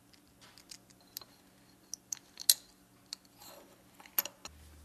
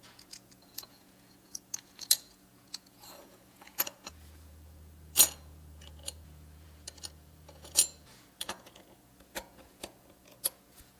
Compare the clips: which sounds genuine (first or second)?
first